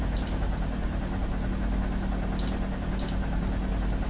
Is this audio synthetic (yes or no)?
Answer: no